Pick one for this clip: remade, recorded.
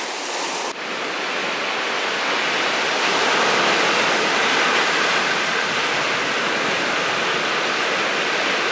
recorded